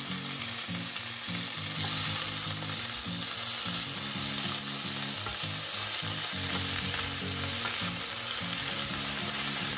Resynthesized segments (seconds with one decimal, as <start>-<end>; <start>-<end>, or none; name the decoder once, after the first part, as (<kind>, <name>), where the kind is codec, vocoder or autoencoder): 9.2-9.8 (vocoder, BigVGAN v2)